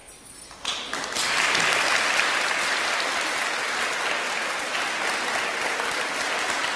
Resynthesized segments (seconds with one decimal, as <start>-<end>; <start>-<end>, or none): none